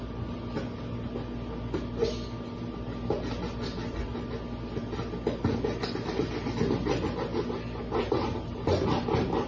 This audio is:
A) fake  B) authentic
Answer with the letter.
B